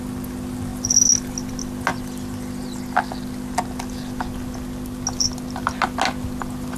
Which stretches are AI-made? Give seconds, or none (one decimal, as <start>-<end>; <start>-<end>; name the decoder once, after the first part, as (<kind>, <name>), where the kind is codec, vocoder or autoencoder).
none